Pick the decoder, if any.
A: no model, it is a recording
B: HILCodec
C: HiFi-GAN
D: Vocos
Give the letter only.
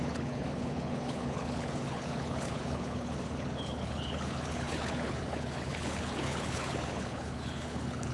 B